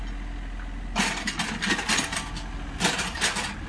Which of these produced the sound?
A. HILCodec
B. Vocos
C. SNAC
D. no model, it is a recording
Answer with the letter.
D